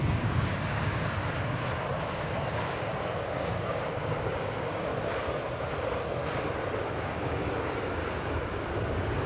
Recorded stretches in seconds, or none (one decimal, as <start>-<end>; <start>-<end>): 1.2-2.0; 4.9-7.0